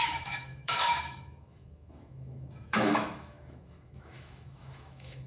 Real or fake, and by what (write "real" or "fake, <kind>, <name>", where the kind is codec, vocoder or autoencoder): fake, autoencoder, DAC-VAE